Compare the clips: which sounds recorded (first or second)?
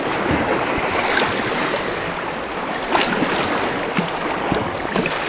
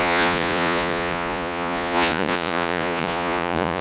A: first